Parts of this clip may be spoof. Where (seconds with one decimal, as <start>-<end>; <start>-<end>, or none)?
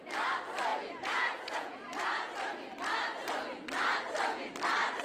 0.7-2.3